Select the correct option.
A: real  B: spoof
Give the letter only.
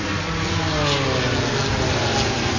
A